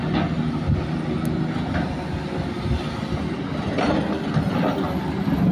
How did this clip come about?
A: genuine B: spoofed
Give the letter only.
A